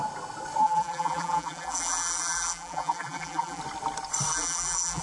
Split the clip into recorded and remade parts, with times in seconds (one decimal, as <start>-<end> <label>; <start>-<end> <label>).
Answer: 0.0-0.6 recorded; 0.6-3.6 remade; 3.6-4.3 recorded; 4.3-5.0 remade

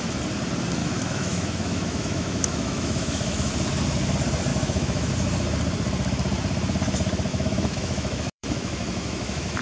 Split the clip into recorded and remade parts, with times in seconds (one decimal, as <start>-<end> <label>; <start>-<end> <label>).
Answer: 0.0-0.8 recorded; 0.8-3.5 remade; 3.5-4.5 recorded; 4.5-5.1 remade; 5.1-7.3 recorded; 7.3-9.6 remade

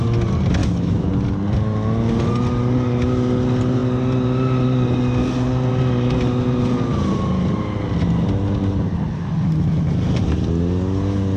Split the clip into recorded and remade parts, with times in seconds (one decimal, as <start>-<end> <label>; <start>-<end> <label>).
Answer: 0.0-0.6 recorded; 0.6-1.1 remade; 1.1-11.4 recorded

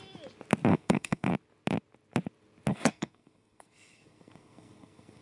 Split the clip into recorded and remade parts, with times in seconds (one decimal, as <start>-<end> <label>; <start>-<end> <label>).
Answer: 0.0-0.7 recorded; 0.7-1.3 remade; 1.3-2.7 recorded; 2.7-5.2 remade

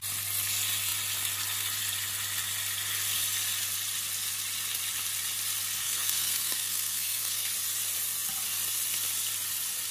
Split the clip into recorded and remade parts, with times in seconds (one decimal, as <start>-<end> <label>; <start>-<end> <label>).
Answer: 0.0-5.8 recorded; 5.8-7.5 remade; 7.5-9.9 recorded

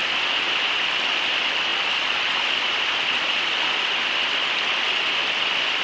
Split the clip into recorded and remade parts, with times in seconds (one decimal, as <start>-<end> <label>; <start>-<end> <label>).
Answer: 0.0-5.8 remade